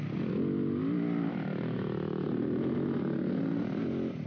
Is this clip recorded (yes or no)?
yes